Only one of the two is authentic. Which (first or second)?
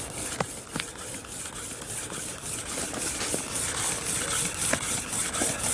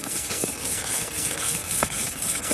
first